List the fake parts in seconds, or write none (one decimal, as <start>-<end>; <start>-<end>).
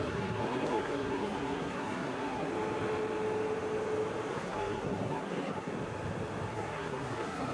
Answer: 0.0-2.5; 4.3-5.7; 6.5-7.5